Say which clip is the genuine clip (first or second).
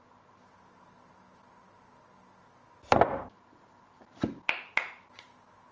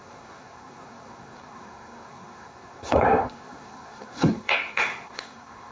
first